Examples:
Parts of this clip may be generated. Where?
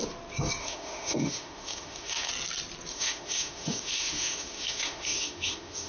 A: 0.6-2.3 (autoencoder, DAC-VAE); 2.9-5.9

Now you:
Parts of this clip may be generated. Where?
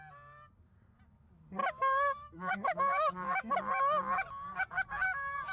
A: 1.6-3.5 (autoencoder, DAC-VAE)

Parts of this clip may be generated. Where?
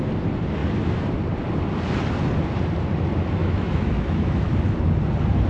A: 3.4-4.5 (autoencoder, DAC-VAE)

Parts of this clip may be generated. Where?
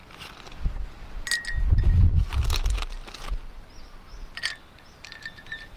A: none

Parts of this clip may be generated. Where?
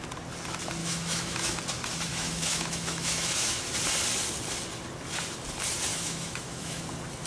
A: 0.8-1.6 (autoencoder, DAC-VAE); 2.1-3.6; 5.9-6.8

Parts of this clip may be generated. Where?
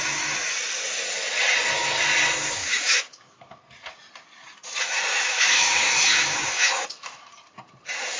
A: 2.6-3.6 (autoencoder, DAC-VAE); 5.1-7.3